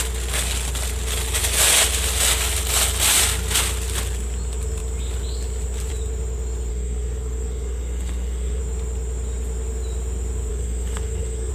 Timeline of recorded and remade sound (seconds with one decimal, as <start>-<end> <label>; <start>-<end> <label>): 0.0-6.7 recorded; 6.7-8.6 remade; 8.6-10.5 recorded; 10.5-11.5 remade